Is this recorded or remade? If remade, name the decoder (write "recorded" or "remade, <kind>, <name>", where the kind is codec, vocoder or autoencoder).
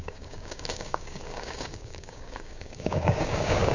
remade, codec, DAC